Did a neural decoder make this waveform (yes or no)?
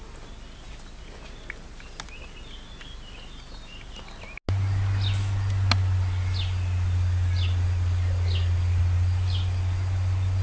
no